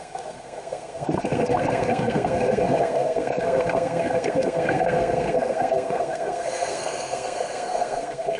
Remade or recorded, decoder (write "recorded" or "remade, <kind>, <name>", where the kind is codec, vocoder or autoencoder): remade, codec, SNAC